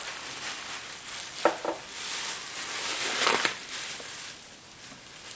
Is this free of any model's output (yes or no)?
yes